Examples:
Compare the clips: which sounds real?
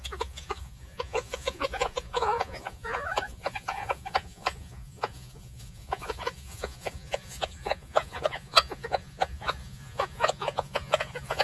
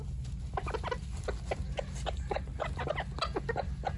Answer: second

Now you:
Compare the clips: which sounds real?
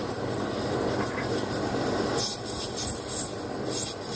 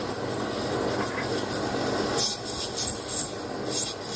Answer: second